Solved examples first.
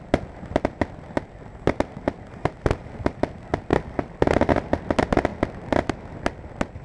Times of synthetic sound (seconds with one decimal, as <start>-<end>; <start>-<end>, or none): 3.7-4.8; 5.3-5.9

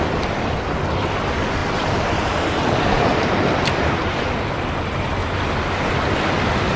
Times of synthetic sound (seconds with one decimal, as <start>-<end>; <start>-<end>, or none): 1.6-2.3

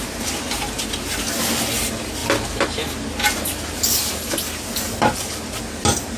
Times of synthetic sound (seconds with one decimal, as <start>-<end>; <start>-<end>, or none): none

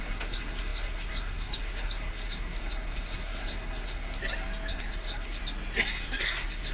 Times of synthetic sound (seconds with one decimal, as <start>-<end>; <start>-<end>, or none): 0.0-4.2; 4.7-5.4; 6.2-6.7

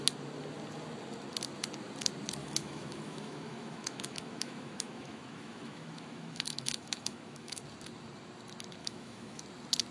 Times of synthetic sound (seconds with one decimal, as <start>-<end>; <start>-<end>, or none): 2.4-7.6; 8.8-9.4